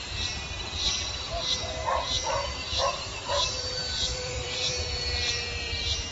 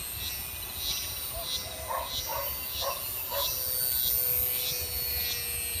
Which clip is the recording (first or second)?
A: second